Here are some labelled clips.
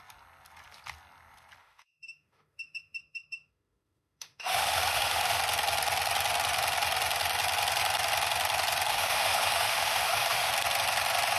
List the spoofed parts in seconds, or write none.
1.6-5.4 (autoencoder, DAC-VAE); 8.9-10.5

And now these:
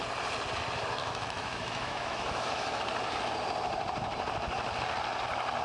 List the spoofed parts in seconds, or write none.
1.0-2.8 (autoencoder, DAC-VAE)

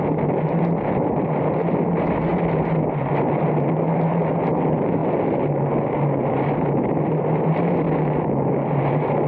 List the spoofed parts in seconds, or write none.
none

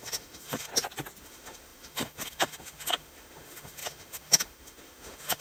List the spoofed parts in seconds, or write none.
0.0-0.7 (autoencoder, DAC-VAE); 1.2-5.4

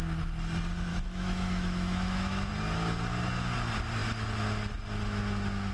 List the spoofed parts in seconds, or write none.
0.9-2.5 (autoencoder, DAC-VAE)